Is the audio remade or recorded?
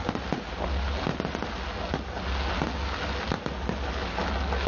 recorded